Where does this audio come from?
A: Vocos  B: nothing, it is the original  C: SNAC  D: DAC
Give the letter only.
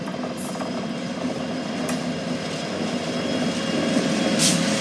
B